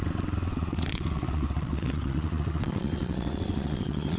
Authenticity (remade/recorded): remade